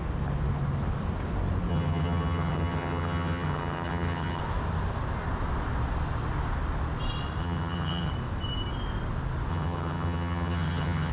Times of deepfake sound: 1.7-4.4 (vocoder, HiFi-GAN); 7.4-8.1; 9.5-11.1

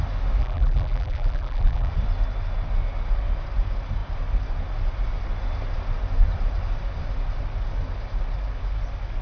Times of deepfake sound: 0.4-1.9 (vocoder, BigVGAN v2)

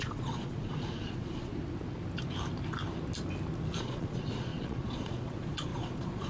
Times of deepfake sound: 0.0-1.5 (vocoder, Vocos); 3.8-6.3

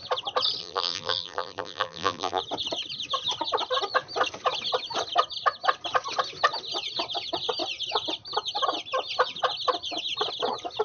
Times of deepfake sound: 0.6-2.4 (vocoder, BigVGAN v2)

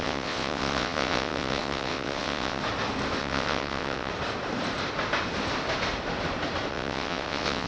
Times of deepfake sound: 0.0-2.6 (vocoder, WaveNeXt); 3.2-4.1; 6.7-7.7

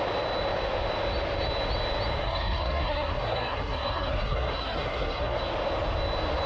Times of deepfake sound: 2.2-5.4 (codec, SNAC)

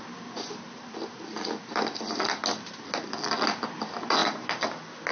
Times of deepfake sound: none

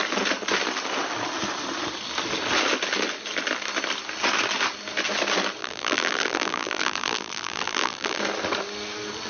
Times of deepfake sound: 5.6-8.2 (vocoder, BigVGAN v2)